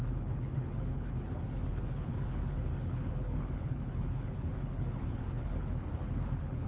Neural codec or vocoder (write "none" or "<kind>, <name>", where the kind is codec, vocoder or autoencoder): codec, HILCodec